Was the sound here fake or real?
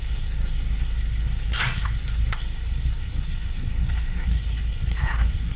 fake